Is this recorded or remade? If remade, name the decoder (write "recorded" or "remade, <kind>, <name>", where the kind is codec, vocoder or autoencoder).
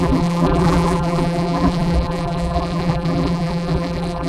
remade, vocoder, BigVGAN v2